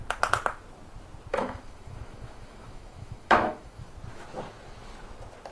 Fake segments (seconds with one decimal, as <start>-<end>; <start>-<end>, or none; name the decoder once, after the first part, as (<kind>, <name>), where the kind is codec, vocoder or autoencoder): 1.3-3.9 (autoencoder, DAC-VAE)